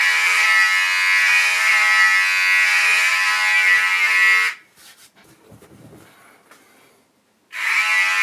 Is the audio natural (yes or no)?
yes